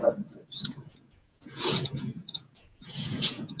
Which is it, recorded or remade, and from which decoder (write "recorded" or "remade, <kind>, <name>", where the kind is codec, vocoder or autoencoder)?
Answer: remade, vocoder, Vocos